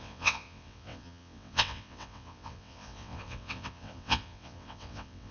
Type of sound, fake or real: fake